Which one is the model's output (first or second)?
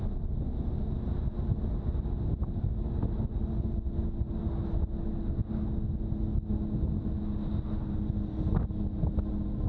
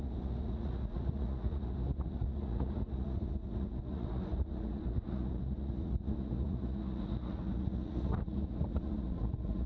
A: second